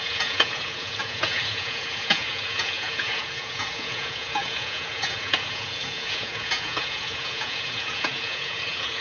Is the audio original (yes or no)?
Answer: no